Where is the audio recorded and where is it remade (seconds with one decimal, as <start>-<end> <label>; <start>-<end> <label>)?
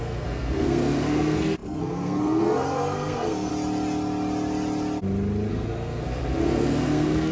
0.0-3.5 remade; 3.5-5.5 recorded; 5.5-7.3 remade